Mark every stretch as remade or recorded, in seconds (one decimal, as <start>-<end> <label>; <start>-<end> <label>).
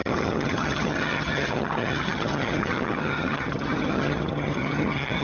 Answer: 0.0-5.2 remade